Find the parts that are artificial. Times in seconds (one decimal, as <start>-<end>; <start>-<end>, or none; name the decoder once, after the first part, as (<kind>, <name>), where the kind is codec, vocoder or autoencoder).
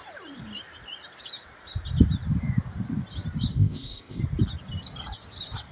3.5-4.2 (codec, ZipCodec)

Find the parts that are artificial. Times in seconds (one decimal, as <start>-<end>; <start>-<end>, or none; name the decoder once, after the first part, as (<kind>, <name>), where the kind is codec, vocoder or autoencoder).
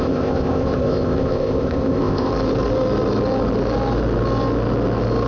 0.0-2.3 (codec, ZipCodec)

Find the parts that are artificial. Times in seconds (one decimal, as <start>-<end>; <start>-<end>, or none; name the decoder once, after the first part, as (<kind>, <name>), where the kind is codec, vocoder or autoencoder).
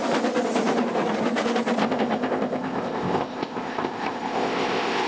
1.8-5.1 (codec, ZipCodec)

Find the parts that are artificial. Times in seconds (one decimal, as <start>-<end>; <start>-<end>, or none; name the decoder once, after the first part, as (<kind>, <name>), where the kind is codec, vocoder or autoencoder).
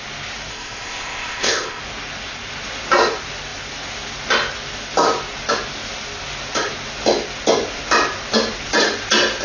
0.5-1.8 (codec, ZipCodec)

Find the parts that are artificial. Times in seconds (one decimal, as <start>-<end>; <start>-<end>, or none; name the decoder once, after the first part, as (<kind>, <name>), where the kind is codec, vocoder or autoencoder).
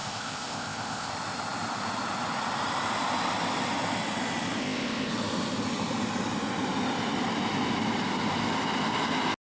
0.0-1.1 (codec, ZipCodec); 4.6-5.1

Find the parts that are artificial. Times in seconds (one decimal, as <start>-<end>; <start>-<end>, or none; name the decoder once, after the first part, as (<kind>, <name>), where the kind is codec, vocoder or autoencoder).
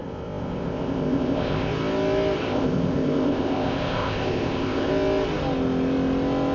0.0-1.7 (codec, ZipCodec); 2.4-4.9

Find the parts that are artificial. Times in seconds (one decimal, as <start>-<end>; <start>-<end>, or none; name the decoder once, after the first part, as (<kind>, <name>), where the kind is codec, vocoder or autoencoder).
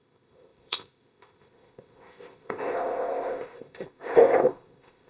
0.0-5.1 (codec, ZipCodec)